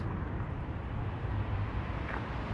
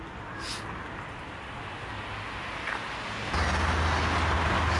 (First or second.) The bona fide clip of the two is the second